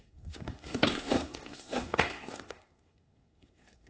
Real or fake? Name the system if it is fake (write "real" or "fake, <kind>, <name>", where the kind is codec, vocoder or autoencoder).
fake, codec, SNAC